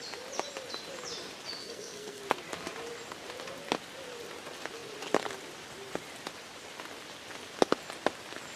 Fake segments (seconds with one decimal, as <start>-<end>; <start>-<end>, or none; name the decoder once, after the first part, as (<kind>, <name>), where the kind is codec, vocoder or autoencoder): 1.6-2.2 (codec, SNAC)